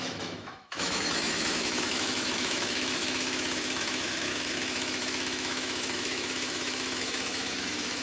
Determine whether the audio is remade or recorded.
remade